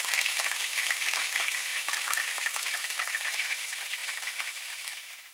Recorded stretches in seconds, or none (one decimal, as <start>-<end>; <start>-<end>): none